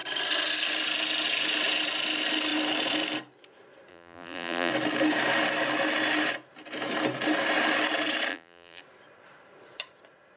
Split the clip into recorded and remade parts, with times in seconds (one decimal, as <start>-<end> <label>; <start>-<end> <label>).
0.0-3.9 recorded; 3.9-4.7 remade; 4.7-8.3 recorded; 8.3-8.8 remade; 8.8-10.4 recorded

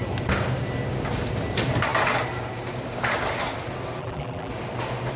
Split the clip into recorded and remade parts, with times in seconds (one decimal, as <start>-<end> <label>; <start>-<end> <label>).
0.0-4.0 recorded; 4.0-4.5 remade; 4.5-5.2 recorded

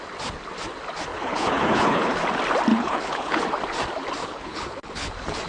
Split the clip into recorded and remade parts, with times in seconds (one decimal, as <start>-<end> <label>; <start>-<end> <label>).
0.0-1.1 recorded; 1.1-2.2 remade; 2.2-2.7 recorded; 2.7-3.4 remade; 3.4-4.2 recorded; 4.2-5.1 remade; 5.1-5.5 recorded

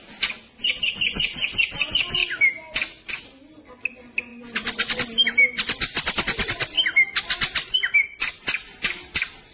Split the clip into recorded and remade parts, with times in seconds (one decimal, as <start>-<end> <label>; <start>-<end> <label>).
0.0-9.5 recorded